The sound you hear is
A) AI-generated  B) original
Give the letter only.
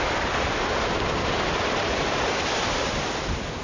B